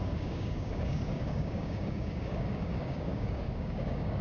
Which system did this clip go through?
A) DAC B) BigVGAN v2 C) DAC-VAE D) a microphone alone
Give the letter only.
A